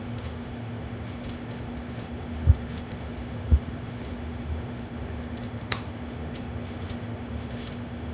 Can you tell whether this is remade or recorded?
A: remade